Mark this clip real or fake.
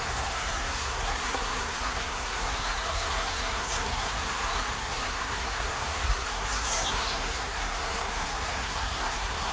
fake